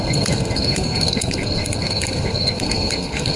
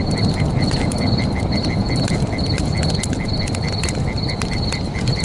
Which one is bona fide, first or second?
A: second